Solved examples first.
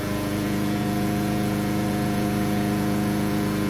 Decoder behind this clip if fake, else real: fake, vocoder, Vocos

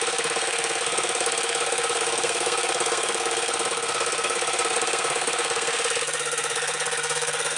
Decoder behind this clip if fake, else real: fake, codec, SNAC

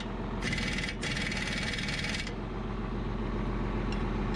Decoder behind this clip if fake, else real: real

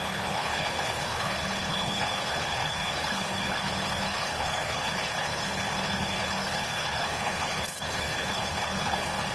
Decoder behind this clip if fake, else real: fake, codec, HILCodec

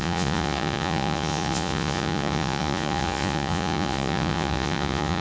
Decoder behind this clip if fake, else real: fake, vocoder, Vocos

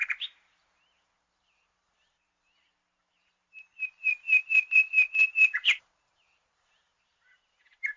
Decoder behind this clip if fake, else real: fake, vocoder, BigVGAN v2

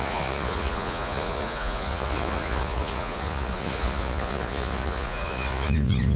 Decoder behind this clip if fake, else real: fake, vocoder, Vocos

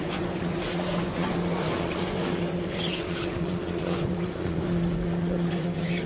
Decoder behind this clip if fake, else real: fake, vocoder, Vocos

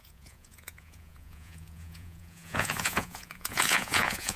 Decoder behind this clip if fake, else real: fake, vocoder, Vocos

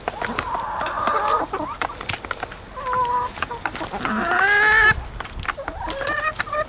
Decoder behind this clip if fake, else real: real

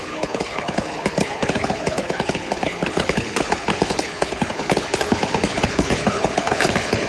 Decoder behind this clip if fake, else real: fake, codec, HILCodec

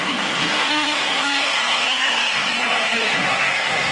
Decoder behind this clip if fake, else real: fake, codec, SNAC